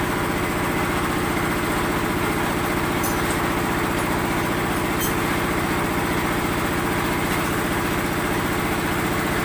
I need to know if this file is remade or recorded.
recorded